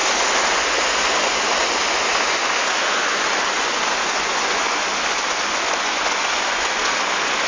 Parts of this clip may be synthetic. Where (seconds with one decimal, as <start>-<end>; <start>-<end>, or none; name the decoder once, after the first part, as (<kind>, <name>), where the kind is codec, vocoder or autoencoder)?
0.0-7.5 (vocoder, Vocos)

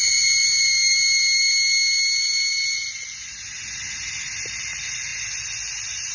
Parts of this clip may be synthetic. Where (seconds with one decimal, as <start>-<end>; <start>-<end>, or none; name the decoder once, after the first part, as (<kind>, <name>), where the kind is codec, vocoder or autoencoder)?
none

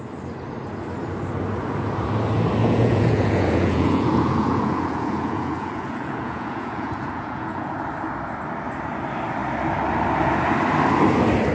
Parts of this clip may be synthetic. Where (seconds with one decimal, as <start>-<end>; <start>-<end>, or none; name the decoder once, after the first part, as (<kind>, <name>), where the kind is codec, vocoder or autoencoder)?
2.6-7.7 (vocoder, Vocos)

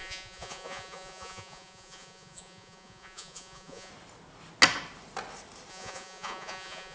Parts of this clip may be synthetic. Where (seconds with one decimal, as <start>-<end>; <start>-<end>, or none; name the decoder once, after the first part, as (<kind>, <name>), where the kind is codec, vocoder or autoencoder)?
0.0-3.9 (vocoder, Vocos); 5.7-6.9